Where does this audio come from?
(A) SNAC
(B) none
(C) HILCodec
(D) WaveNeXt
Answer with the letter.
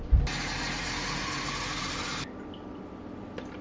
B